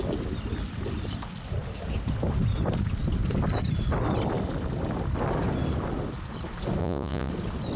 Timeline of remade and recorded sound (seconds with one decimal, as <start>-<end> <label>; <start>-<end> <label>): 0.0-6.8 recorded; 6.8-7.3 remade; 7.3-7.8 recorded